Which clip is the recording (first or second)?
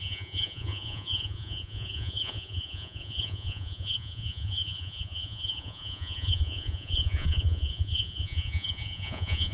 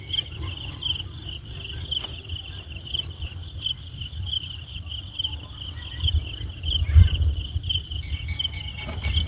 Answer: second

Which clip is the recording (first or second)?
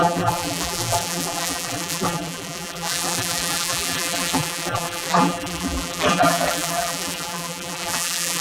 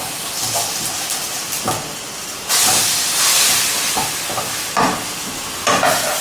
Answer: second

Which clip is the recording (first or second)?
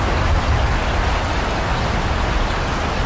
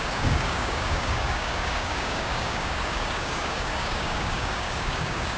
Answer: first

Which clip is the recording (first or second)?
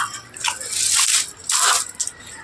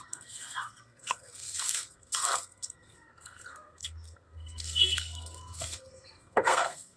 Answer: first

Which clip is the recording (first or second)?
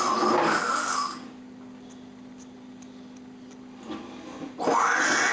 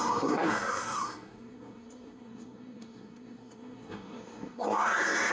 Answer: first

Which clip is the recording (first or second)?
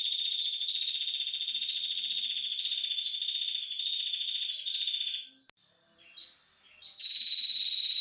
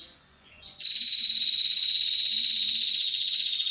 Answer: first